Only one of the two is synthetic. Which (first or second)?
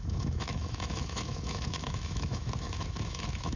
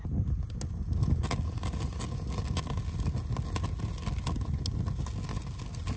first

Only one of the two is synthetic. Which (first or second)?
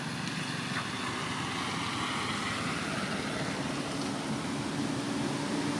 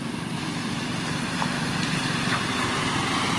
second